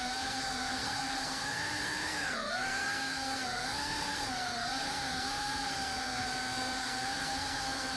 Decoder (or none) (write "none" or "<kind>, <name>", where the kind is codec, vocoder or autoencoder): codec, SNAC